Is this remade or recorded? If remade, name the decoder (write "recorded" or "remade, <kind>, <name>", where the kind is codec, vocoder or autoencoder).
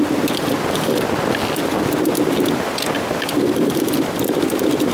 recorded